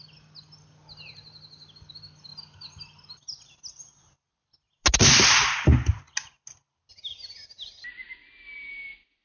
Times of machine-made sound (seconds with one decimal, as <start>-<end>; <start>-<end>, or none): none